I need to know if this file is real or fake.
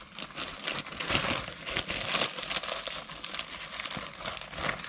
real